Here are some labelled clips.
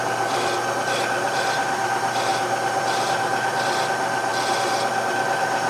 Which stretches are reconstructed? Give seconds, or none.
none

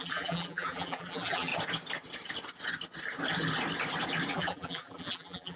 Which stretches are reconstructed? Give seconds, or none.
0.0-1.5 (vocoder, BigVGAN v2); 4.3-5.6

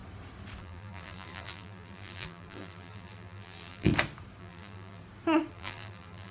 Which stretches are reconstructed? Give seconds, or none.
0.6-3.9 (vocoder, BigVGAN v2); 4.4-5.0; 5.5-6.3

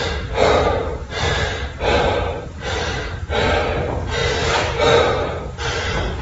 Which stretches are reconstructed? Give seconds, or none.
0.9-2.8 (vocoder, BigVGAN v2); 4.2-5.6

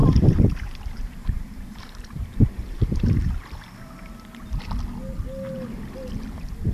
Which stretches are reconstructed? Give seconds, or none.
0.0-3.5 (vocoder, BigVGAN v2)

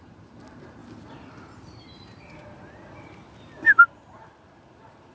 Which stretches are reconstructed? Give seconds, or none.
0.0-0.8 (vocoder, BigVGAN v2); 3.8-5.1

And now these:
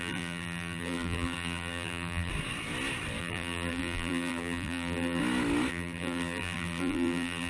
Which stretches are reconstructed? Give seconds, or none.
0.0-2.3 (vocoder, BigVGAN v2); 3.2-5.2; 5.7-7.5